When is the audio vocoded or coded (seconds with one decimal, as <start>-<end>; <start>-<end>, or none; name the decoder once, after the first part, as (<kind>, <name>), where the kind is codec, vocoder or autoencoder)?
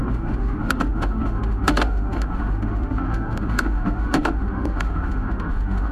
0.0-5.9 (autoencoder, DAC-VAE)